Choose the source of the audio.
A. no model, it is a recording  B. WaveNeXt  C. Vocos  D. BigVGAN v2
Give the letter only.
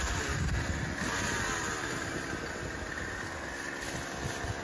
A